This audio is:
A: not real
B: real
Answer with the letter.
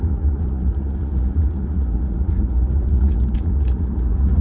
A